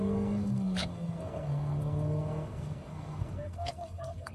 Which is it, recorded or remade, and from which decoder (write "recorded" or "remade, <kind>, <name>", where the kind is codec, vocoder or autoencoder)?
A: remade, codec, SNAC